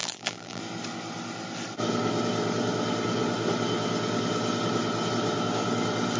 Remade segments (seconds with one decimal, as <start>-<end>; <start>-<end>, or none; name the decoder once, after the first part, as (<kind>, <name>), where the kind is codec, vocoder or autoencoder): 0.0-0.6 (vocoder, BigVGAN v2)